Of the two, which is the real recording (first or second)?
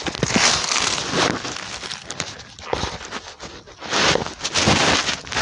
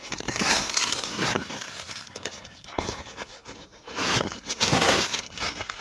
first